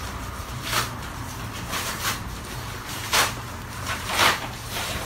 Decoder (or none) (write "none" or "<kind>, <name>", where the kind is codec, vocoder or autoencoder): vocoder, BigVGAN v2